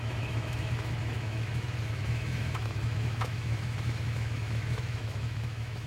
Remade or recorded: remade